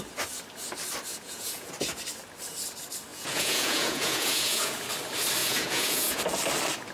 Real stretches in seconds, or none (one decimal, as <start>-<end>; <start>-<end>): 0.0-1.1; 1.7-3.1; 4.8-5.4; 6.2-6.9